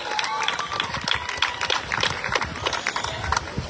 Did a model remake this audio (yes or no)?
no